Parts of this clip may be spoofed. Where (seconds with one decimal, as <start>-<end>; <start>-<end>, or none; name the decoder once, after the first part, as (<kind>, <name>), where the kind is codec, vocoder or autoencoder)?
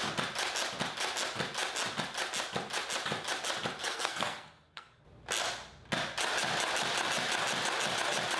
3.8-5.0 (codec, SNAC)